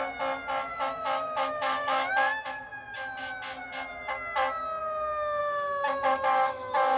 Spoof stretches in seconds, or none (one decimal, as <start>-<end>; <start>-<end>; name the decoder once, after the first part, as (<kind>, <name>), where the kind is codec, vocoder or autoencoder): 0.7-2.1 (autoencoder, DAC-VAE); 5.4-7.0